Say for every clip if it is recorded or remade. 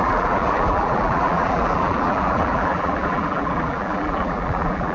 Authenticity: remade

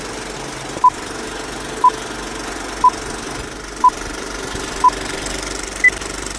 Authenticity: recorded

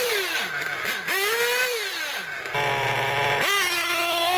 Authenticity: recorded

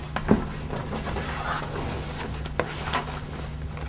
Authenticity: recorded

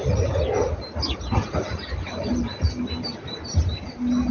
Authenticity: recorded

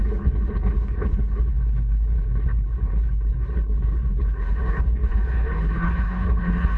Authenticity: remade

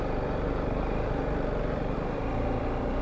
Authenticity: remade